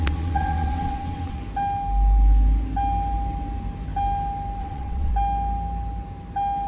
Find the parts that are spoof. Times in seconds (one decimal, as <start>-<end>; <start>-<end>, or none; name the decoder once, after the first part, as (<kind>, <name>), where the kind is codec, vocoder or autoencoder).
0.0-1.4 (vocoder, WaveNeXt); 4.6-5.1